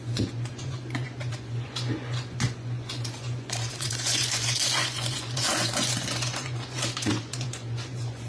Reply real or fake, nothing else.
fake